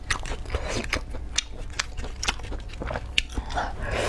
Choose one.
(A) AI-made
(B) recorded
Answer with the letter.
B